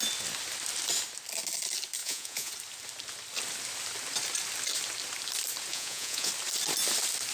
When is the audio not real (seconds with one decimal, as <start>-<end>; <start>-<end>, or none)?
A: 2.0-2.5; 5.7-6.3